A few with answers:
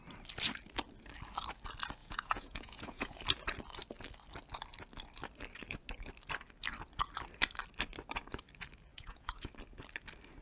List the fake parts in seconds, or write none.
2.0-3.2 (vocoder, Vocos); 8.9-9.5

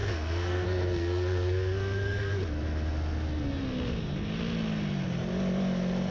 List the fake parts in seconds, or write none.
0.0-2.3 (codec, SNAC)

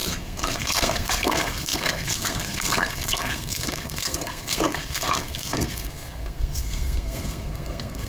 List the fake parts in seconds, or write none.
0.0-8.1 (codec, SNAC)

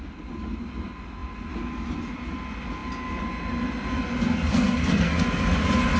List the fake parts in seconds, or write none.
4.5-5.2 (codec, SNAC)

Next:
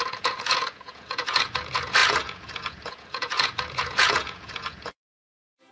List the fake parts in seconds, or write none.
0.0-5.7 (vocoder, Vocos)